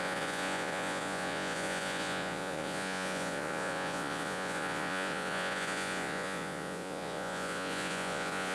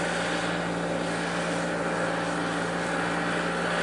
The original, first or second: second